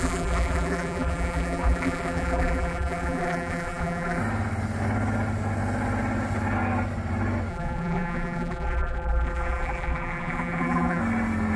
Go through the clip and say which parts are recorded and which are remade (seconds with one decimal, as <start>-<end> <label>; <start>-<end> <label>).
0.0-4.2 remade; 4.2-7.5 recorded; 7.5-11.0 remade; 11.0-11.6 recorded